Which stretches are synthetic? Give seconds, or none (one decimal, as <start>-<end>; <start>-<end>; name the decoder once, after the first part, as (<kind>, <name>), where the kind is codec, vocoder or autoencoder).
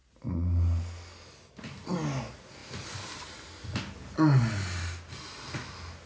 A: none